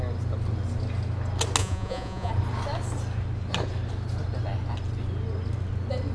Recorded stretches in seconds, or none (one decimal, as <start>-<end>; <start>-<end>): 0.0-1.6; 2.3-6.1